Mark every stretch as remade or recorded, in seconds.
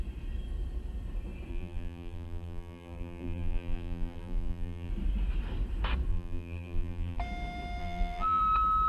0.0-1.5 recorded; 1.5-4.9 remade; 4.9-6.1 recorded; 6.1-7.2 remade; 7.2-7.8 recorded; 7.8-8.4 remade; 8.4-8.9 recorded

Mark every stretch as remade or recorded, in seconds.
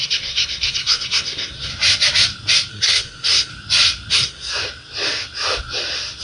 0.0-1.7 remade; 1.7-2.7 recorded; 2.7-3.5 remade; 3.5-4.1 recorded; 4.1-4.5 remade; 4.5-6.2 recorded